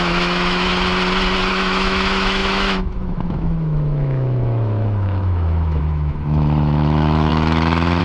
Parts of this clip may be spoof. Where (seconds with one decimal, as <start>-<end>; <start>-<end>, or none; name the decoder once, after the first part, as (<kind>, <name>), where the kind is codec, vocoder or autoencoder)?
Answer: 0.0-0.7 (autoencoder, DAC-VAE); 1.5-8.0